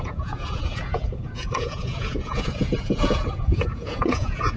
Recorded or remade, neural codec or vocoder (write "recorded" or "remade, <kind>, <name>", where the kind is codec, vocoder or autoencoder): remade, vocoder, Vocos